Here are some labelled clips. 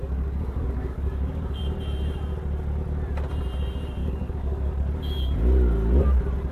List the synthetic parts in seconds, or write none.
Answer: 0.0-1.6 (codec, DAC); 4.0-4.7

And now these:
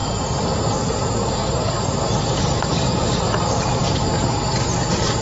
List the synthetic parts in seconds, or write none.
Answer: 1.4-4.1 (vocoder, BigVGAN v2)

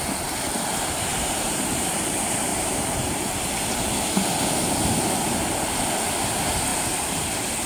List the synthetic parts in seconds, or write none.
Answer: 1.1-2.0 (vocoder, BigVGAN v2); 2.5-3.5; 6.7-7.3

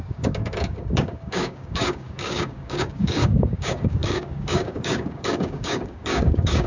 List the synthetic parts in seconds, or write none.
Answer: 0.0-6.7 (codec, DAC)

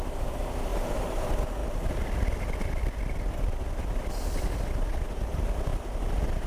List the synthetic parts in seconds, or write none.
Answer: none

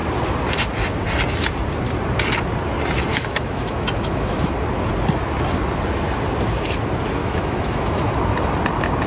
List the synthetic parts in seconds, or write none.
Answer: 3.1-4.5 (autoencoder, DAC-VAE); 7.2-8.1

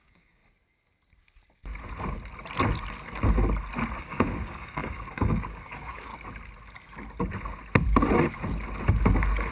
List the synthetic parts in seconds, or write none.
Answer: 0.0-0.4 (codec, DAC); 4.0-6.1